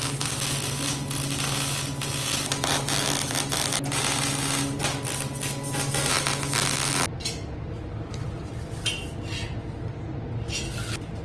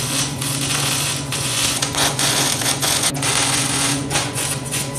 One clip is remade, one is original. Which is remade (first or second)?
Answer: second